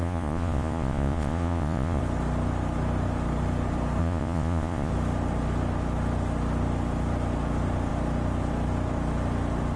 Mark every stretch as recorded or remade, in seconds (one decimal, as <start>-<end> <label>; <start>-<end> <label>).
0.0-2.0 remade; 2.0-4.0 recorded; 4.0-4.9 remade; 4.9-9.8 recorded